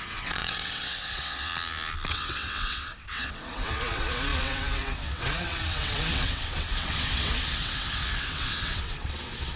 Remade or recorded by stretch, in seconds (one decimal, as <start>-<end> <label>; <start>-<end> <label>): 0.0-1.5 remade; 1.5-2.1 recorded; 2.1-9.6 remade